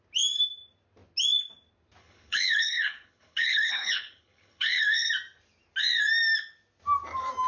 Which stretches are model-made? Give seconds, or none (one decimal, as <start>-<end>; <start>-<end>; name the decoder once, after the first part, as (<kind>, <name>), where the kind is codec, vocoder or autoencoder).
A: 2.0-5.1 (codec, HILCodec)